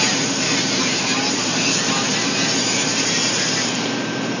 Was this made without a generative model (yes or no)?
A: no